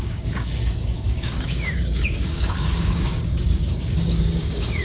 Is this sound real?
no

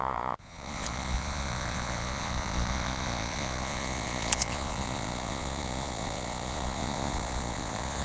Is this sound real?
no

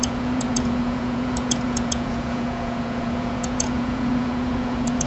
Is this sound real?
no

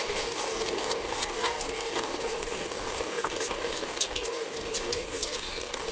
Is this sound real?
no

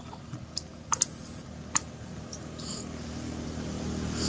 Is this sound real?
yes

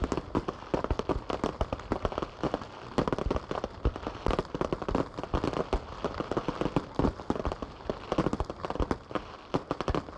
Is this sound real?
yes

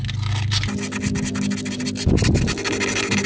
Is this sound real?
yes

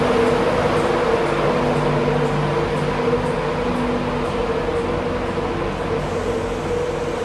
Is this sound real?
yes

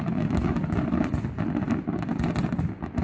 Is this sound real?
yes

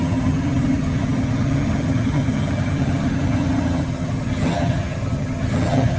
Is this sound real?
no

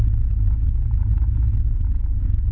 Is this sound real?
no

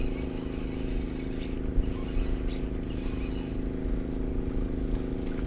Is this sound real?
yes